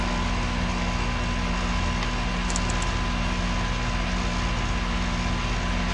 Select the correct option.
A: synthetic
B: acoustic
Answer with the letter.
B